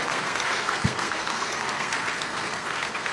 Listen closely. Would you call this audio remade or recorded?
remade